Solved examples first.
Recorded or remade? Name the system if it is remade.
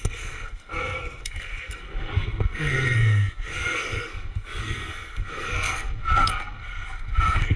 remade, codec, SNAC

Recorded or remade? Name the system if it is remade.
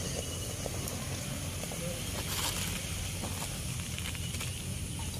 recorded